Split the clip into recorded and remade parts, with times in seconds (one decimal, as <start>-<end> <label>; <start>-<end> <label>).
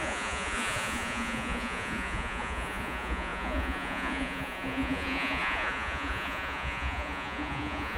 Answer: 0.0-8.0 remade